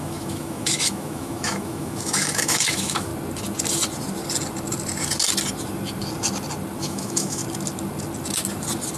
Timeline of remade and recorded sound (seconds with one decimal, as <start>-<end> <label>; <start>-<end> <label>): 0.0-3.1 remade; 3.1-6.8 recorded; 6.8-7.4 remade; 7.4-9.0 recorded